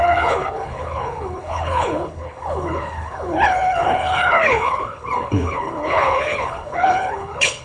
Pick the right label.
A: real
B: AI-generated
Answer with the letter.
B